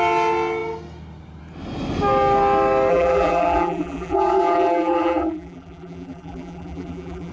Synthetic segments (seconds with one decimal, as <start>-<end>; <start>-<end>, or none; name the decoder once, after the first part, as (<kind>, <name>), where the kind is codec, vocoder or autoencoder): 2.9-7.3 (vocoder, BigVGAN v2)